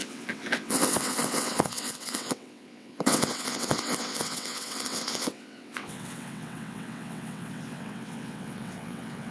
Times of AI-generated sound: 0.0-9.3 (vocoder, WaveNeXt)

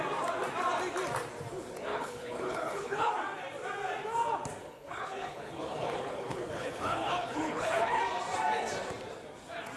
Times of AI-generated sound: 1.9-3.1 (codec, HILCodec); 4.6-8.0

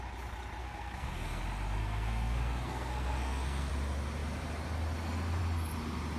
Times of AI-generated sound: 0.6-1.4 (codec, SNAC); 1.8-3.7